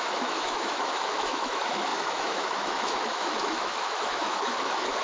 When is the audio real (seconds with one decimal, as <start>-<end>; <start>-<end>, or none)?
none